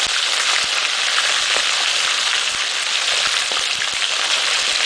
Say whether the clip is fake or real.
real